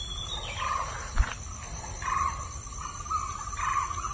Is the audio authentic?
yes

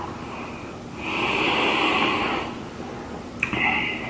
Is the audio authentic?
yes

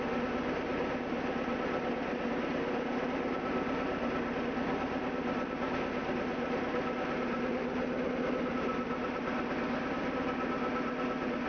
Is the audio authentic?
yes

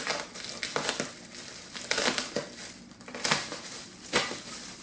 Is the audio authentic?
yes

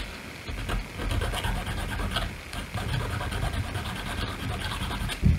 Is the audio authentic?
yes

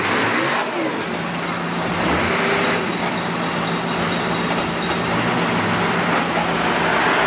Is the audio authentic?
yes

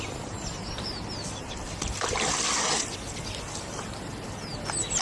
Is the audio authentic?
yes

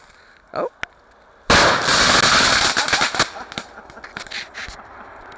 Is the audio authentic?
yes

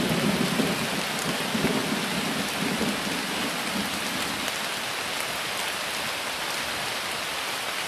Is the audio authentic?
yes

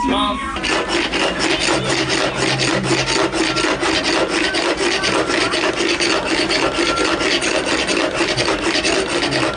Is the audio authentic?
yes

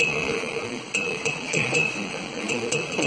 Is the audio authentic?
no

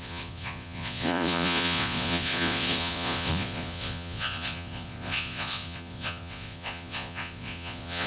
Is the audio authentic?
no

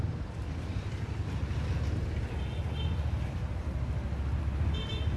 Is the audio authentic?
yes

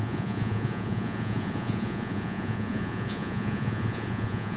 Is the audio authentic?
no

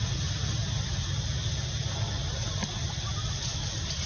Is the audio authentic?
yes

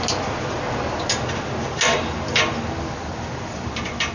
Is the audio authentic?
yes